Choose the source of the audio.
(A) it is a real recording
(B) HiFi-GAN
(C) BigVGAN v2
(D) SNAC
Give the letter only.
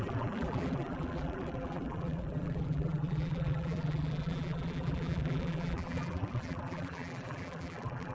C